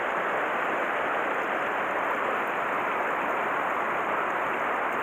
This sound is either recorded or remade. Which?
recorded